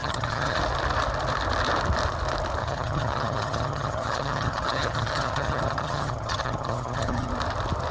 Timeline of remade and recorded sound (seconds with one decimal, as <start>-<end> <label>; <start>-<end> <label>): 0.0-0.6 remade; 0.6-2.6 recorded; 2.6-7.3 remade; 7.3-7.9 recorded

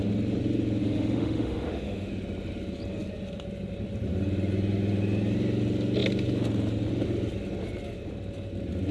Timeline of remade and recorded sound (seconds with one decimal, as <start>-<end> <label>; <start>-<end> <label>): 0.0-0.8 recorded; 0.8-2.1 remade; 2.1-8.9 recorded

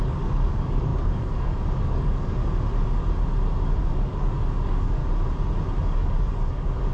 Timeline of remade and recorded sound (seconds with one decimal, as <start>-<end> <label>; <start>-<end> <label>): 0.0-2.4 remade; 2.4-3.8 recorded; 3.8-5.0 remade; 5.0-5.8 recorded; 5.8-6.9 remade

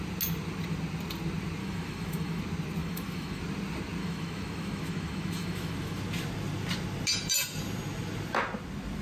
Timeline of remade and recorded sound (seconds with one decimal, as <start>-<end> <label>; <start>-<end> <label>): 0.0-1.6 recorded; 1.6-2.4 remade; 2.4-2.8 recorded; 2.8-3.4 remade; 3.4-4.0 recorded; 4.0-6.0 remade; 6.0-9.0 recorded

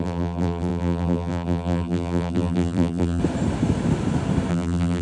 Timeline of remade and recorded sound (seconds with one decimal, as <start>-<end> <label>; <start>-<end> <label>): 0.0-3.2 remade; 3.2-4.5 recorded; 4.5-5.0 remade

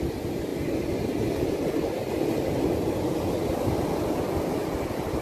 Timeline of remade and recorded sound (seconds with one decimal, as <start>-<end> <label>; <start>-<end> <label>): 0.0-5.2 recorded

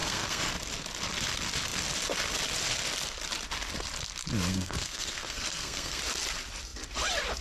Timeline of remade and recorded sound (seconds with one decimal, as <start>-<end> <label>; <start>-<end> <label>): 0.0-0.5 remade; 0.5-4.5 recorded; 4.5-6.0 remade; 6.0-7.4 recorded